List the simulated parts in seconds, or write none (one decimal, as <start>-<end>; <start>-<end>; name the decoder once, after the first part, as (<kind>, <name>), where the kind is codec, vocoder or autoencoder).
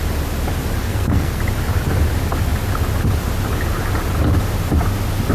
0.8-1.4 (codec, SNAC)